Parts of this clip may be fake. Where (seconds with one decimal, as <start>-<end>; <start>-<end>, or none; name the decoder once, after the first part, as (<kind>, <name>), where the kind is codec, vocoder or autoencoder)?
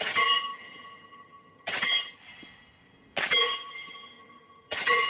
0.0-2.2 (vocoder, HiFi-GAN); 3.3-5.1